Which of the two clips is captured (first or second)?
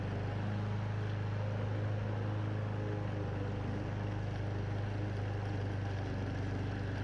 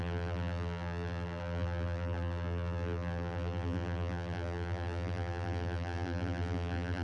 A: first